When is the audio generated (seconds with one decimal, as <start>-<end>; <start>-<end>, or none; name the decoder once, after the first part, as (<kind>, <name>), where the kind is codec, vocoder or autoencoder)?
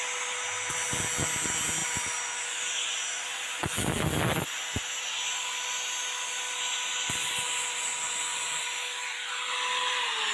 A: none